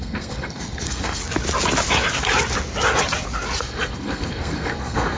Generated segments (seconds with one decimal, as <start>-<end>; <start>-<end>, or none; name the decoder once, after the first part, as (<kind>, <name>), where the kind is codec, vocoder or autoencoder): 0.0-1.2 (codec, SNAC); 3.6-5.2